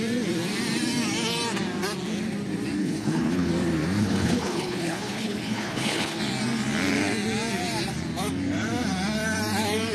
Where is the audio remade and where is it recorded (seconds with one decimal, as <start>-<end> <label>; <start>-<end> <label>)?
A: 0.0-2.8 recorded; 2.8-3.5 remade; 3.5-4.0 recorded; 4.0-6.2 remade; 6.2-9.9 recorded